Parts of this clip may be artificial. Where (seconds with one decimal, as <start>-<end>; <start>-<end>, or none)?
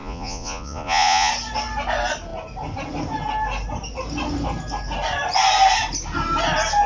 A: 0.0-1.3